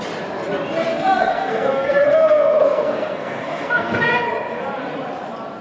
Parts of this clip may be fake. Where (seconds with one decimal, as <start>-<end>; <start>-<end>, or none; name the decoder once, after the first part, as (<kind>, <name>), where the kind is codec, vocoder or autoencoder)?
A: 0.9-4.3 (codec, SNAC)